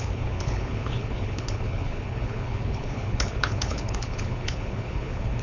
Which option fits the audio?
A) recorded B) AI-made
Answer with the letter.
B